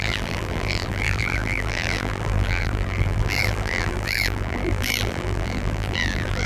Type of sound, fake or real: fake